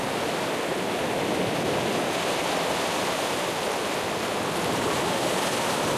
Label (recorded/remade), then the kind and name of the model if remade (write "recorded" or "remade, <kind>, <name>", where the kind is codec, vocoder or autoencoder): recorded